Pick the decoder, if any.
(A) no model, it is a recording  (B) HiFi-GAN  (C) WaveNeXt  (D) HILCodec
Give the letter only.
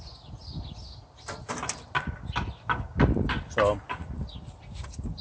A